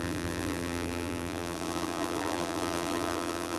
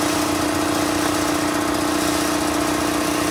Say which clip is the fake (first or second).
first